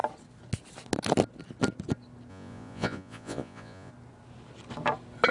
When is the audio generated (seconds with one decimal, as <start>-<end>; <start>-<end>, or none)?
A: 2.3-3.9